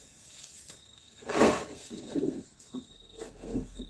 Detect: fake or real fake